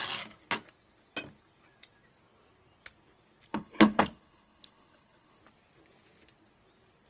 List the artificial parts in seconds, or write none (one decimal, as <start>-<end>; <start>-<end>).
3.5-5.4